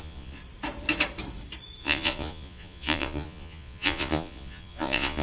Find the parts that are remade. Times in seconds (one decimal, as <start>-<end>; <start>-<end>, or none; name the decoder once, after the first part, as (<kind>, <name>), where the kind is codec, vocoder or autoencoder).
0.0-0.4 (vocoder, Vocos); 1.8-5.2